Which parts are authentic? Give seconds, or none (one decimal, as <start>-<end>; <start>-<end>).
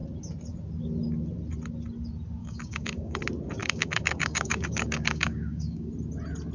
0.0-2.4; 3.2-3.6; 5.9-6.5